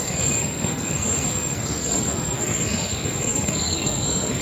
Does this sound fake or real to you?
fake